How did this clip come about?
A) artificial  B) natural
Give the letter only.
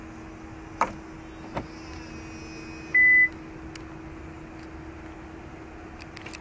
B